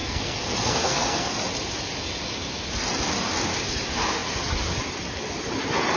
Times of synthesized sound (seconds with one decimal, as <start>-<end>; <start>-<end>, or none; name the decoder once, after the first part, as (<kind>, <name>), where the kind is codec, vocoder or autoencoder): 0.0-1.3 (codec, SNAC)